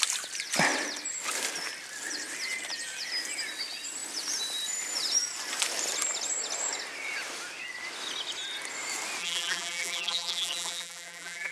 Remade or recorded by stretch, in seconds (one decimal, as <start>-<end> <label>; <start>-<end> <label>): 0.0-9.2 recorded; 9.2-11.5 remade